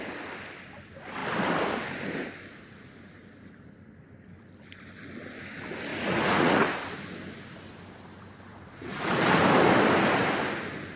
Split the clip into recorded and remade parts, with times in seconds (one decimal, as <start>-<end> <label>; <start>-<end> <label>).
0.0-5.9 recorded; 5.9-6.6 remade; 6.6-8.5 recorded; 8.5-9.2 remade; 9.2-11.0 recorded